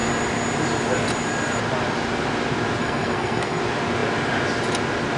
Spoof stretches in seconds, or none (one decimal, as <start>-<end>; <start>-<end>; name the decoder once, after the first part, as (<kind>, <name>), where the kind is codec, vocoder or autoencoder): 2.8-3.6 (codec, SNAC)